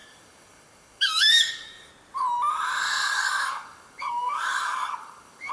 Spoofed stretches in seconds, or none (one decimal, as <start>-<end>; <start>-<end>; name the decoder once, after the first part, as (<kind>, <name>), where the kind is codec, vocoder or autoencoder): 0.0-1.9 (codec, DAC); 3.0-5.5